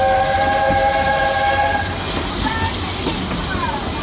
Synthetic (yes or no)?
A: no